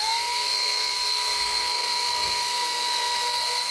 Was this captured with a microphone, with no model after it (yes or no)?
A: no